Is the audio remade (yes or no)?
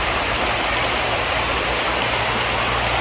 yes